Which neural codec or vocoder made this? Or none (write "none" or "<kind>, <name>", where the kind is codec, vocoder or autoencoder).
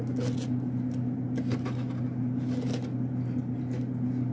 none